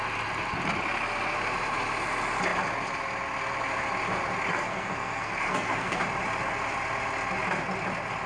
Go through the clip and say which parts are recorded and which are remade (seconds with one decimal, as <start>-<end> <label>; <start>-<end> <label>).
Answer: 0.0-4.5 recorded; 4.5-6.0 remade; 6.0-8.3 recorded